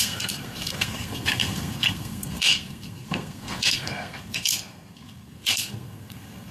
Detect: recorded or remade remade